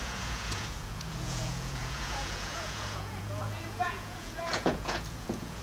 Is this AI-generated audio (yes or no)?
yes